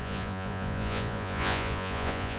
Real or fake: fake